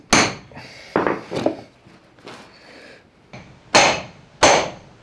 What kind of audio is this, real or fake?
real